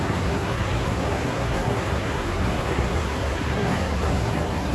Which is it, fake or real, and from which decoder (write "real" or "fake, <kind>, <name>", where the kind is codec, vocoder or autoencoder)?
fake, codec, SNAC